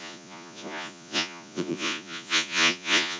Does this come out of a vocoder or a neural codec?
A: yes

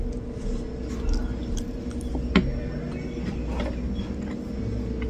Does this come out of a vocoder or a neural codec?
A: no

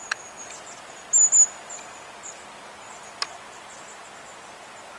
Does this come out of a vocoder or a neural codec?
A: no